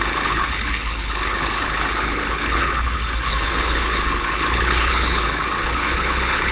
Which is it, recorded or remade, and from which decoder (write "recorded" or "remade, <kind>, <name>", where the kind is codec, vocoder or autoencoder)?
remade, codec, HILCodec